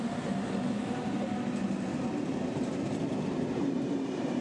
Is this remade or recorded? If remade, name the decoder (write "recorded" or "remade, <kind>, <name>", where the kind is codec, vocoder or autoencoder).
recorded